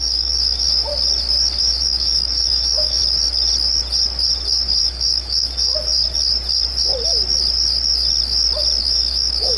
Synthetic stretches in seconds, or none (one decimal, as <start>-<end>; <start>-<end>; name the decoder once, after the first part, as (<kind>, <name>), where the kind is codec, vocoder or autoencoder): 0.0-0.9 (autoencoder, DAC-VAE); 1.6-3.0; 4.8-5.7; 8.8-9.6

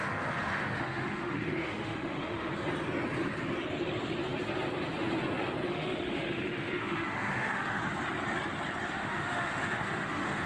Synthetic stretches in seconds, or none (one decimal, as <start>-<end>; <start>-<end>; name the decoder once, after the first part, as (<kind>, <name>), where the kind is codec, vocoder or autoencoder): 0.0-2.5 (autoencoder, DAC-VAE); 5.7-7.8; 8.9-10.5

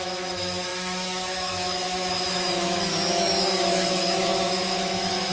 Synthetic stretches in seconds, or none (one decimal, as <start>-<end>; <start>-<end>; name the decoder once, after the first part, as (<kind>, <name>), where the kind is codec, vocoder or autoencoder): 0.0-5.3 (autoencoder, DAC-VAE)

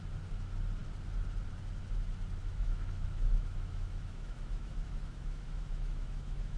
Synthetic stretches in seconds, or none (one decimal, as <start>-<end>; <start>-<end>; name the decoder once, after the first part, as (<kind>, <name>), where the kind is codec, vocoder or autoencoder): 2.4-6.6 (autoencoder, DAC-VAE)

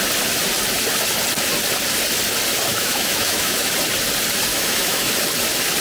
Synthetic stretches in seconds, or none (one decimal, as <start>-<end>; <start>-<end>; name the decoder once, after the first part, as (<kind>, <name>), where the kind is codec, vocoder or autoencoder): 2.7-3.7 (autoencoder, DAC-VAE); 4.5-5.1

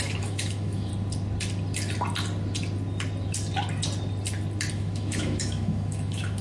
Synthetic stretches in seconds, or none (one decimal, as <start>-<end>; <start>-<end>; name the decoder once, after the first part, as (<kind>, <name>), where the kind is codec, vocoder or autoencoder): 0.0-0.9 (autoencoder, DAC-VAE); 4.7-6.4

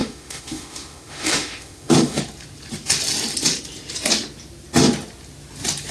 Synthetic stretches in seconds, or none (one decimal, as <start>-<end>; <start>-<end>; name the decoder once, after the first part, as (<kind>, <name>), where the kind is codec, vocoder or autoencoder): 0.0-2.2 (autoencoder, DAC-VAE)

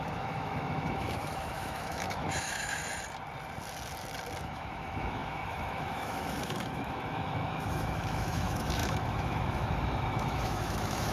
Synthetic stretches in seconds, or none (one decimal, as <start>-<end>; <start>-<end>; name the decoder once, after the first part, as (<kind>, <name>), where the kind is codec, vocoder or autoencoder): 0.0-2.8 (autoencoder, DAC-VAE); 4.4-11.1